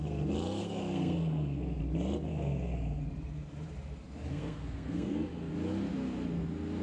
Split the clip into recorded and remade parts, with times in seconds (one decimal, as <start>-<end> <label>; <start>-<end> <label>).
0.0-0.6 recorded; 0.6-1.8 remade; 1.8-2.3 recorded; 2.3-3.0 remade; 3.0-4.3 recorded; 4.3-5.5 remade; 5.5-6.8 recorded

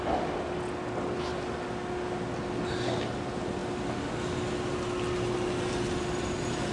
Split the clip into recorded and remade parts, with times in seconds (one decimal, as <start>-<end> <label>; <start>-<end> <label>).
0.0-6.7 recorded

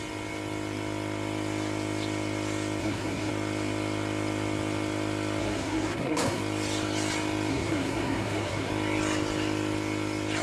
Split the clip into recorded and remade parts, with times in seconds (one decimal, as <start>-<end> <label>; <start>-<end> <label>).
0.0-2.8 recorded; 2.8-3.3 remade; 3.3-5.4 recorded; 5.4-6.4 remade; 6.4-7.5 recorded; 7.5-8.7 remade; 8.7-10.4 recorded

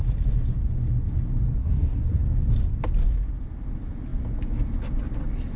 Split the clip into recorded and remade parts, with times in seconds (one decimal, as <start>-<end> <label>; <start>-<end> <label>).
0.0-1.6 recorded; 1.6-2.2 remade; 2.2-5.6 recorded

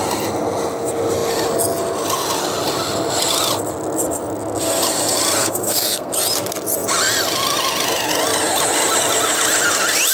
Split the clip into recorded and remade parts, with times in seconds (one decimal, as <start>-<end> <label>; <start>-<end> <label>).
0.0-5.4 recorded; 5.4-6.1 remade; 6.1-10.1 recorded

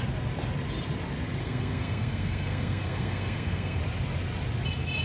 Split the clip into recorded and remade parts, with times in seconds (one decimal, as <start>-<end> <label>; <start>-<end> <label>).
0.0-1.4 recorded; 1.4-3.8 remade; 3.8-5.0 recorded